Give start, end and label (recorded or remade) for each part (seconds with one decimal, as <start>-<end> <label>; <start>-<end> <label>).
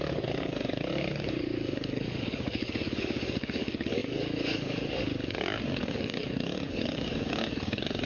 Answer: 0.0-8.1 remade